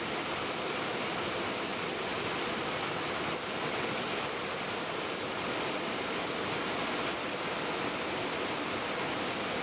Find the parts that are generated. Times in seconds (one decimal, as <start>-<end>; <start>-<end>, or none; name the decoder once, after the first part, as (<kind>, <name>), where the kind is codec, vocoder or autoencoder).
none